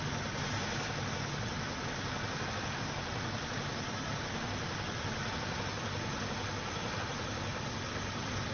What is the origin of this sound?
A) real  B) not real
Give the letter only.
A